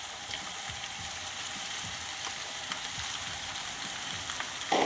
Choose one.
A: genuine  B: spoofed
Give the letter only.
B